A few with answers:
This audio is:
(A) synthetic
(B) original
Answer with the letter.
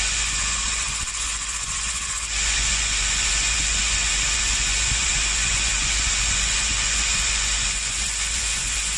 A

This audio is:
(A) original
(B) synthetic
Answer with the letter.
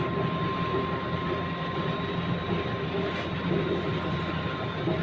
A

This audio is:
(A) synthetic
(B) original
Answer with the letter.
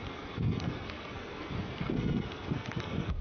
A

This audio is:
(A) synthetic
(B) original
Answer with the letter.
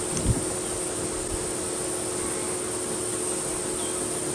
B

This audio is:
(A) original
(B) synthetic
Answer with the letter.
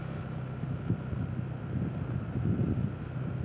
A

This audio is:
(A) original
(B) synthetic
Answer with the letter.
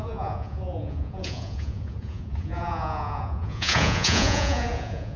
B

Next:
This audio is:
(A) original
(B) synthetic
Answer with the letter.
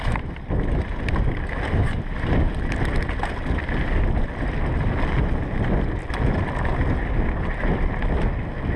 A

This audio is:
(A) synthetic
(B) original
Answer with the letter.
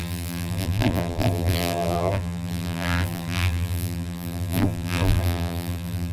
A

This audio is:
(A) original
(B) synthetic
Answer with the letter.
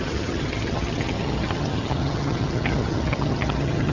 B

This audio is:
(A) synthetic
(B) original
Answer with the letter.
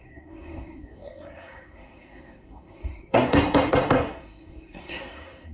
A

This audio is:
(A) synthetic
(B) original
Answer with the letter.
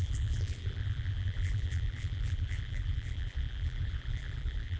A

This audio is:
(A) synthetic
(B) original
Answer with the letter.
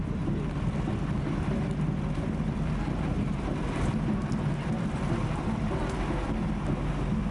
B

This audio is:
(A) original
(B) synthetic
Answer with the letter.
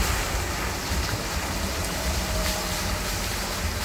A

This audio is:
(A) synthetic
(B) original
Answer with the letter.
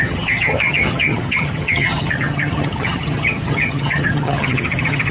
A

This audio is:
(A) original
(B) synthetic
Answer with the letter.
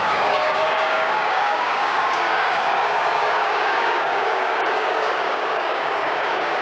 B